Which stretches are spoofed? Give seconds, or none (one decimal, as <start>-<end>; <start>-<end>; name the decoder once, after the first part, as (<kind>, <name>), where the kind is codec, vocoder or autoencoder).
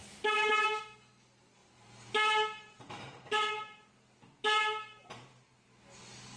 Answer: 0.0-0.8 (vocoder, BigVGAN v2); 1.6-3.9; 4.6-5.3